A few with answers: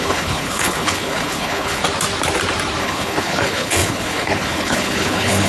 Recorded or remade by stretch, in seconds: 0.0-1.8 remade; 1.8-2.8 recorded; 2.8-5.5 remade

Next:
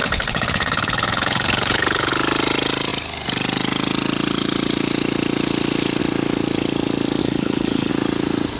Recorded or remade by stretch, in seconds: 0.0-2.1 remade; 2.1-7.2 recorded; 7.2-7.9 remade; 7.9-8.6 recorded

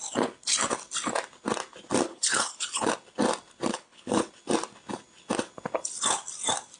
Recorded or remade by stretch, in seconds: 0.0-2.1 recorded; 2.1-2.9 remade; 2.9-3.7 recorded; 3.7-4.3 remade; 4.3-6.8 recorded

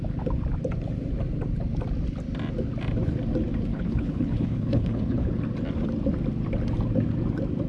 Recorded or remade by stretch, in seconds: 0.0-3.7 recorded; 3.7-5.3 remade; 5.3-7.7 recorded

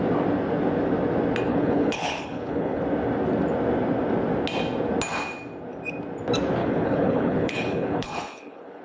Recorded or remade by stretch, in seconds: 0.0-1.5 recorded; 1.5-2.8 remade; 2.8-6.6 recorded; 6.6-8.8 remade

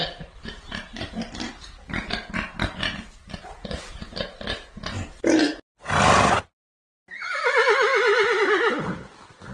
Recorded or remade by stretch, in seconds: 0.0-9.5 recorded

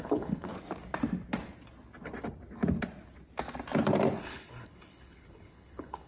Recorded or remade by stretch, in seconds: 0.0-0.5 remade; 0.5-4.2 recorded; 4.2-6.1 remade